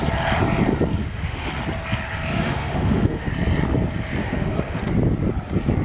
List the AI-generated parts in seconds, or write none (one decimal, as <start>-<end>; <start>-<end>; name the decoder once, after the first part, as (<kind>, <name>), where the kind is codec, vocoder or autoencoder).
1.0-1.5 (autoencoder, DAC-VAE); 2.3-3.3; 4.2-4.9